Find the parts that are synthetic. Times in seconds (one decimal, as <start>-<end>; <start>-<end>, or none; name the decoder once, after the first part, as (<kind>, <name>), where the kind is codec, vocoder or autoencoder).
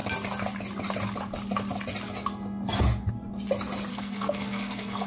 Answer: 3.9-5.1 (codec, SNAC)